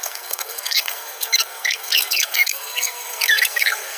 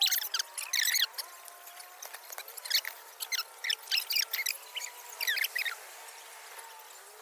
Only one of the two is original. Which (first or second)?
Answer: second